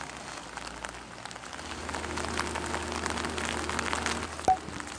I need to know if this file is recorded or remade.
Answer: recorded